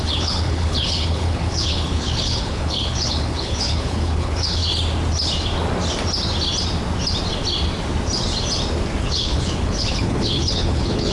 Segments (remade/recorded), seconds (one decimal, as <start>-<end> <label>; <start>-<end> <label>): 0.0-4.6 remade; 4.6-9.0 recorded; 9.0-11.1 remade